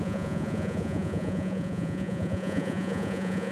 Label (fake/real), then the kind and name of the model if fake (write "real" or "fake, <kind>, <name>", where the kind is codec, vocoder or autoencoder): fake, vocoder, Vocos